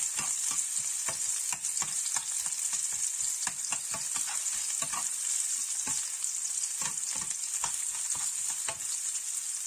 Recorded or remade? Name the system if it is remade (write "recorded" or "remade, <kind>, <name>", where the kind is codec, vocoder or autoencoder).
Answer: recorded